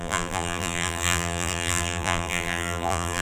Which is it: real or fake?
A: fake